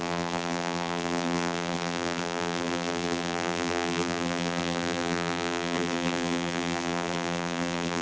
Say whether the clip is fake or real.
fake